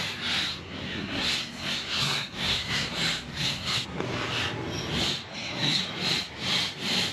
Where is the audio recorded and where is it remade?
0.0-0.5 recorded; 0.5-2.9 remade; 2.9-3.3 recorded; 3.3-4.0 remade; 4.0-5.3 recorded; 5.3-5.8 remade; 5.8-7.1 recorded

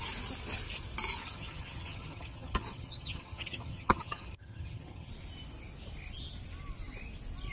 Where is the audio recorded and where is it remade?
0.0-1.2 recorded; 1.2-5.1 remade; 5.1-7.5 recorded

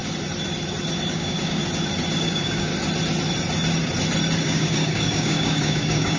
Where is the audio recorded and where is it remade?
0.0-1.1 recorded; 1.1-1.6 remade; 1.6-2.2 recorded; 2.2-2.7 remade; 2.7-4.4 recorded; 4.4-6.2 remade

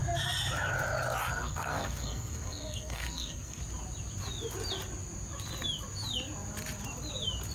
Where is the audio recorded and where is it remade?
0.0-1.2 recorded; 1.2-3.6 remade; 3.6-7.5 recorded

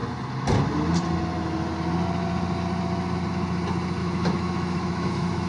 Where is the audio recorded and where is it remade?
0.0-4.0 recorded; 4.0-5.5 remade

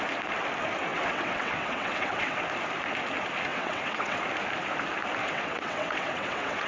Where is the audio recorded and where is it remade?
0.0-0.9 recorded; 0.9-2.4 remade; 2.4-3.5 recorded; 3.5-4.2 remade; 4.2-5.2 recorded; 5.2-6.7 remade

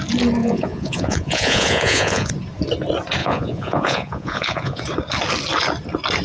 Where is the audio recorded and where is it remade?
0.0-0.4 recorded; 0.4-2.3 remade; 2.3-3.2 recorded; 3.2-4.8 remade; 4.8-6.2 recorded

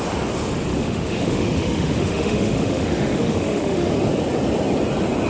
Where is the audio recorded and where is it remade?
0.0-0.7 recorded; 0.7-3.9 remade; 3.9-5.3 recorded